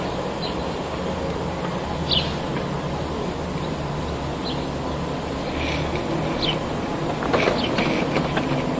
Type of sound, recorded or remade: recorded